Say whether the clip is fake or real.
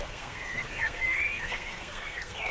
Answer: fake